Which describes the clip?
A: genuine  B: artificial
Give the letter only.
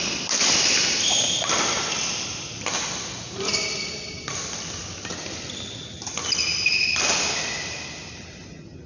A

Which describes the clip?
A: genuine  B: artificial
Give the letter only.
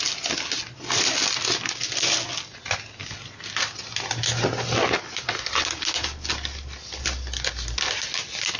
A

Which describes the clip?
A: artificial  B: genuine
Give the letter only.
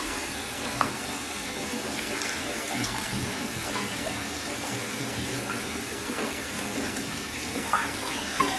A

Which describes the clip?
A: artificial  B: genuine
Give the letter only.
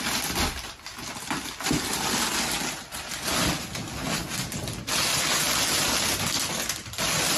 B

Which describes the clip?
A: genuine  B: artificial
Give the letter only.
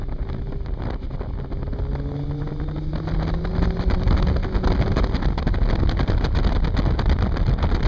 A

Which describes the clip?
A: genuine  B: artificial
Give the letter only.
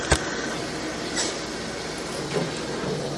A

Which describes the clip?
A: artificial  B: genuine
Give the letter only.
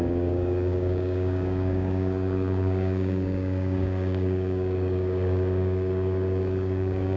A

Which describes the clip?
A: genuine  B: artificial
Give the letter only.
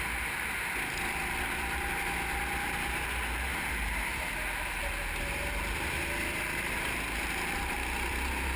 A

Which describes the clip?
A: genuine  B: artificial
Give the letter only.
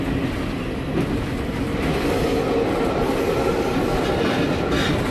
A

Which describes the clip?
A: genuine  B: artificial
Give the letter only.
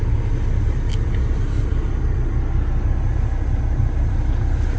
A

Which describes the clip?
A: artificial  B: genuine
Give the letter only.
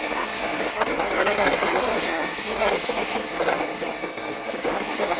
A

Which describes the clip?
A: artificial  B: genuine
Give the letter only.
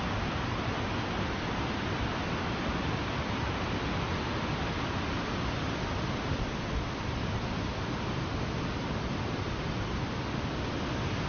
B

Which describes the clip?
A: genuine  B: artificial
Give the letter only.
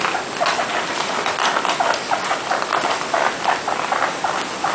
A